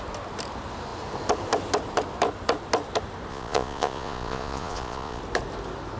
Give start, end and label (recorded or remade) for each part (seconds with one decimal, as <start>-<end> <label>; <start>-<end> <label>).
0.0-3.3 recorded; 3.3-5.2 remade; 5.2-6.0 recorded